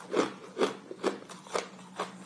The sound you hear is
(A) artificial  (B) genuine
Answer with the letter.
B